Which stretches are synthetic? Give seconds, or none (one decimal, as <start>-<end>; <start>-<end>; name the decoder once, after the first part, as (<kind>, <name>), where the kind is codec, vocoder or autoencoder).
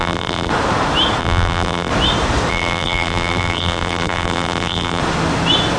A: 0.0-0.5 (vocoder, BigVGAN v2); 1.2-1.9; 2.5-5.0